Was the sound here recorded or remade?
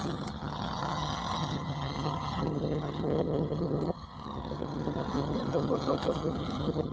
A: remade